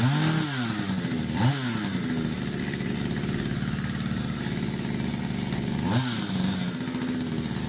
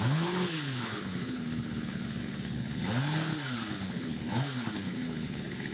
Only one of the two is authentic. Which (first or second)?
first